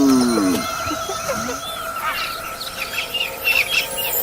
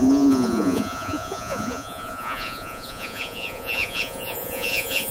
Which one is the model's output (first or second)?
second